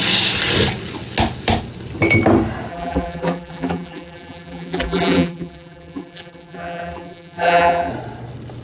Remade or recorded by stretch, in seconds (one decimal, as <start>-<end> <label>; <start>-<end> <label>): 0.0-2.7 recorded; 2.7-7.9 remade; 7.9-8.6 recorded